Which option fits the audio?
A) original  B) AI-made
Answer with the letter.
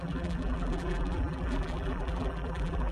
B